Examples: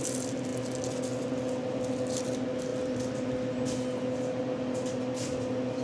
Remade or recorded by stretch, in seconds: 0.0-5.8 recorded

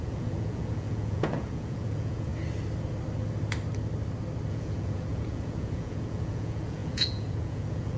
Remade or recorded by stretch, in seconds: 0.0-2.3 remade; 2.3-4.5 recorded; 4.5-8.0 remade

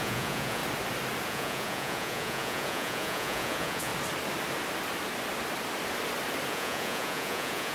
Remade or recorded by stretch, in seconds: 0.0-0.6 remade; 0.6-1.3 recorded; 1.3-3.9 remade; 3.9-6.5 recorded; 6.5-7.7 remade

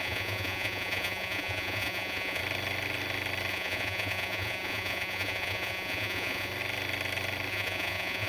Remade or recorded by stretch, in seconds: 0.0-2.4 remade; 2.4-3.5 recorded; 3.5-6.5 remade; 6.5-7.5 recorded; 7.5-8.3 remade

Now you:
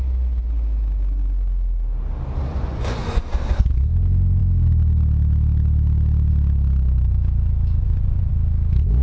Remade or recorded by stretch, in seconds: 0.0-2.5 recorded; 2.5-3.2 remade; 3.2-7.8 recorded; 7.8-8.3 remade; 8.3-9.0 recorded

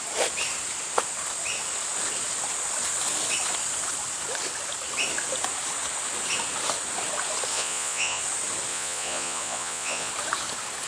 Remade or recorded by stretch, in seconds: 0.0-7.5 recorded; 7.5-8.2 remade; 8.2-8.7 recorded; 8.7-10.1 remade; 10.1-10.9 recorded

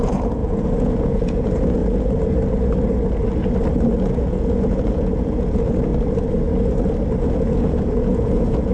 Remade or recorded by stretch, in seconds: 0.0-1.8 remade; 1.8-3.9 recorded; 3.9-5.9 remade; 5.9-7.2 recorded; 7.2-8.7 remade